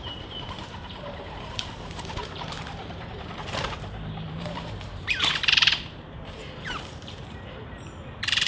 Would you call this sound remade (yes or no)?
yes